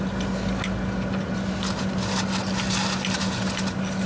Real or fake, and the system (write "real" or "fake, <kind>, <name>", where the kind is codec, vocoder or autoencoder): real